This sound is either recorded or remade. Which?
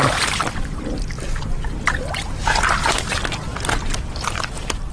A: recorded